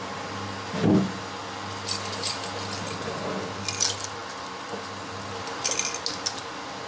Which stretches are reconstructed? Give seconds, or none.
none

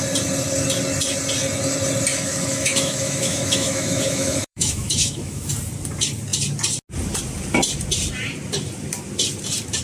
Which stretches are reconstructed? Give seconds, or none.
2.1-5.5

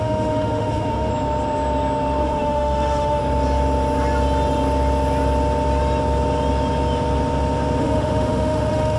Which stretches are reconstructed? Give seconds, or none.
0.0-1.1; 2.2-3.2; 7.8-9.0

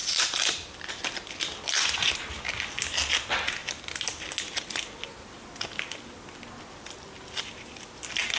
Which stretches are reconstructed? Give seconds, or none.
none

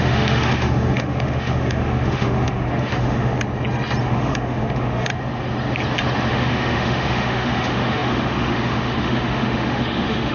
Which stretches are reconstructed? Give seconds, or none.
0.0-3.3; 4.0-5.1; 6.3-10.3

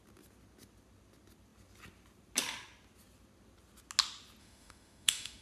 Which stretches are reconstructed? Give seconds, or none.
4.4-5.4

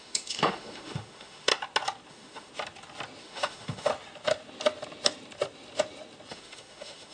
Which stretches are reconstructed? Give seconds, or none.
0.0-1.5; 2.1-2.5; 3.2-3.9; 6.3-7.1

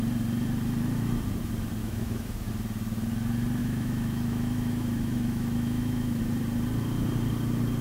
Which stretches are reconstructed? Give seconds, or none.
1.8-2.5; 3.6-6.2